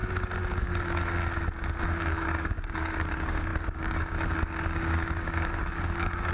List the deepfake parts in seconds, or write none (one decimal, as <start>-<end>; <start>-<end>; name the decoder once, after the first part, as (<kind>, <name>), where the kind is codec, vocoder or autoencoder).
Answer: 0.6-1.2 (codec, DAC); 1.8-6.3